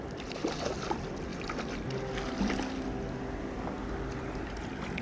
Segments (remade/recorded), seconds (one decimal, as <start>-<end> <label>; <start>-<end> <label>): 0.0-5.0 recorded